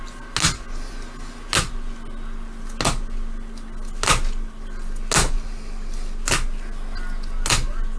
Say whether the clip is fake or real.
real